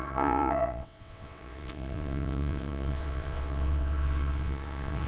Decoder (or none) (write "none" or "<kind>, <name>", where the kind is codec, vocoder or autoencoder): vocoder, WaveNeXt